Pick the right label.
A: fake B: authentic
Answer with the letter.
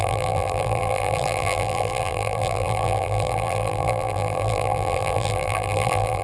A